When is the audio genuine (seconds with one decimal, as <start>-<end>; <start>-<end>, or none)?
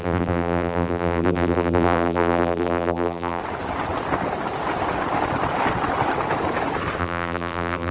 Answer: 3.4-7.0